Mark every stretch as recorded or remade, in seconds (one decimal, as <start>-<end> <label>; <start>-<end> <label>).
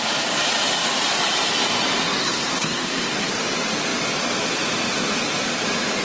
0.0-2.2 recorded; 2.2-3.3 remade; 3.3-6.0 recorded